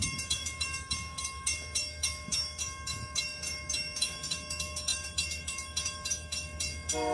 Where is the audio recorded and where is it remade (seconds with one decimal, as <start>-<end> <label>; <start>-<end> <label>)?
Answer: 0.0-7.1 remade